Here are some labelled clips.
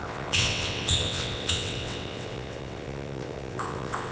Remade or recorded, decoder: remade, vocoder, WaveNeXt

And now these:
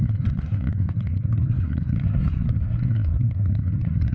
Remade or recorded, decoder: remade, codec, SNAC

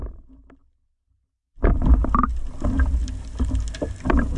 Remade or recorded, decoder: recorded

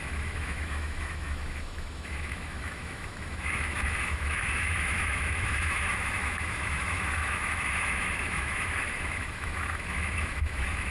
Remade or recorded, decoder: remade, autoencoder, DAC-VAE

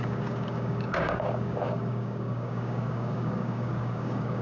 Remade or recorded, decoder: remade, codec, DAC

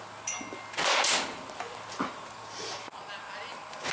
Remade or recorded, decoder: recorded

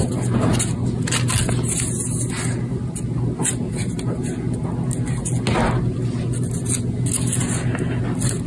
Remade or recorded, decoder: recorded